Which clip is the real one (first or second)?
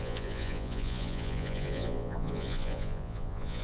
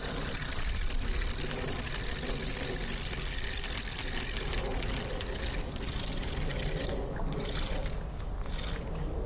second